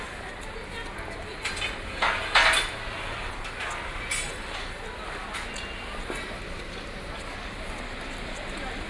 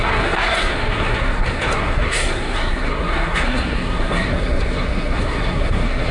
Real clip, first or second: first